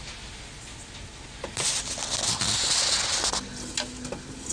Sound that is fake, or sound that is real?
real